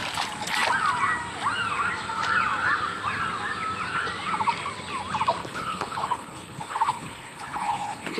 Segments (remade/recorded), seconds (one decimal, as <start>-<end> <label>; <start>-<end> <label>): 0.0-5.4 recorded; 5.4-8.2 remade